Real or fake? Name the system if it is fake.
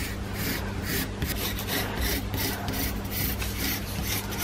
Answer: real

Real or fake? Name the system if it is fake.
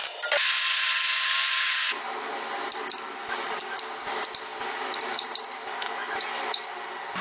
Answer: real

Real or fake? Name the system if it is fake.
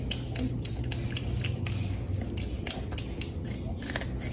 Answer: real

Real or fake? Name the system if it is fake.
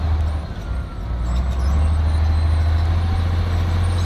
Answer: real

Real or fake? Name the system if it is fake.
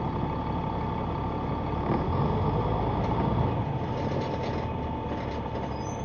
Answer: real